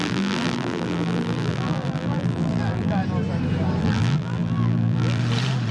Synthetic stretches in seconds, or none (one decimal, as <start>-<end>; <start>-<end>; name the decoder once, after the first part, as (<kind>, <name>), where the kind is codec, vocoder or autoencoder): 0.0-3.0 (vocoder, BigVGAN v2); 3.8-5.2